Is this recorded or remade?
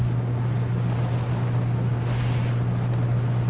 recorded